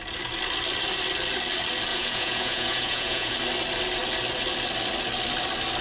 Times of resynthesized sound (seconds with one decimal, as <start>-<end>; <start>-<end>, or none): 1.9-3.3